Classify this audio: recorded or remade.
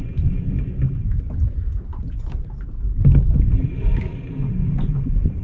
recorded